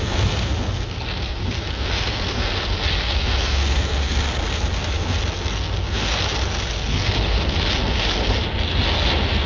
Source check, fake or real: real